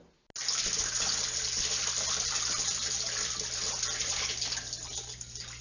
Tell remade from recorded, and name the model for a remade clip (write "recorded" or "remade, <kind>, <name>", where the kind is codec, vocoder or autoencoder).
recorded